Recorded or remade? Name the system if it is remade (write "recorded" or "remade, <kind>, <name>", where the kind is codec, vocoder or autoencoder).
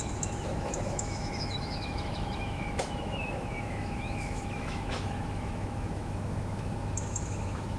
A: remade, autoencoder, DAC-VAE